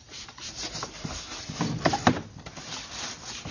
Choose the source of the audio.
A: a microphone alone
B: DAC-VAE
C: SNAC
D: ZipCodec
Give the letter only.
A